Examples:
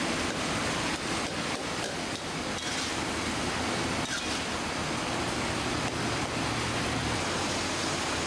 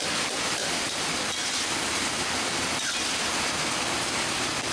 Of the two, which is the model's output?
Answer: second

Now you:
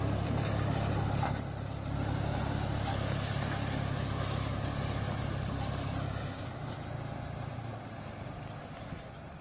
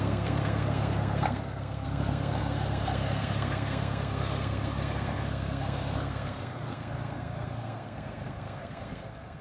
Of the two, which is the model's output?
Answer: second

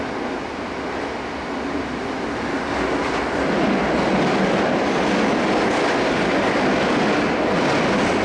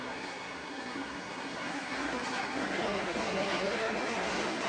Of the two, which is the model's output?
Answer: second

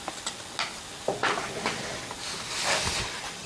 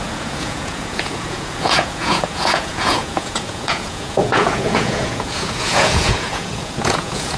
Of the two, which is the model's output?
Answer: second